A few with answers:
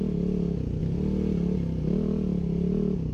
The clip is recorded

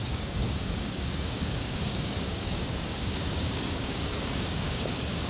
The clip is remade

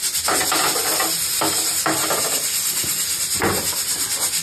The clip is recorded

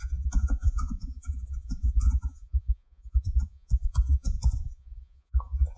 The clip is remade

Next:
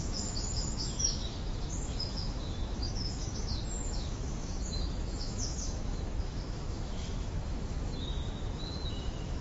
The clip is remade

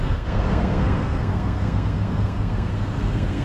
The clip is remade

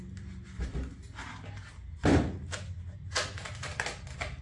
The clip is recorded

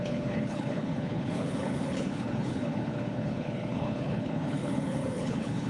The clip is remade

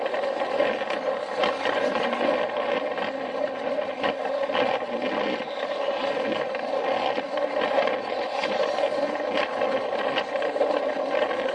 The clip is recorded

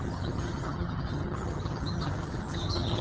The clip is remade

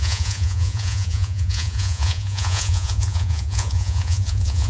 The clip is remade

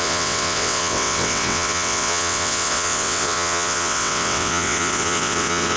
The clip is remade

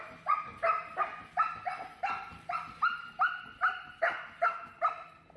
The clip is recorded